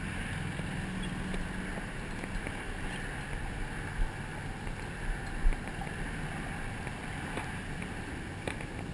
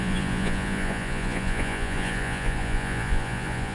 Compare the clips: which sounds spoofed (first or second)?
second